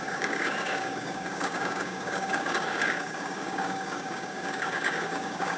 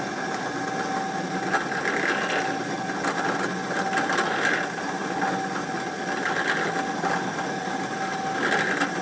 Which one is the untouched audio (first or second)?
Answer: second